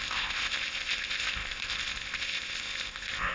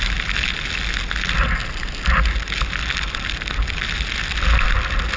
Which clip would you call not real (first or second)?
first